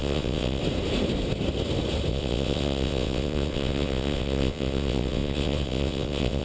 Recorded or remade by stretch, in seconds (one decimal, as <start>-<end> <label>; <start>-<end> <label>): 0.0-0.6 remade; 0.6-2.1 recorded; 2.1-6.4 remade